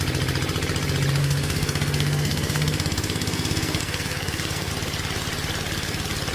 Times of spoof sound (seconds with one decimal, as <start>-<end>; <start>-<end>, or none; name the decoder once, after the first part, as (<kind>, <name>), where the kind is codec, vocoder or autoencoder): 1.2-4.7 (codec, SNAC)